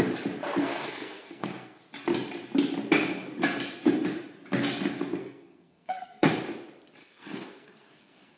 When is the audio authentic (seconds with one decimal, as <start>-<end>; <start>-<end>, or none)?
0.0-0.6; 1.8-5.2; 6.3-7.0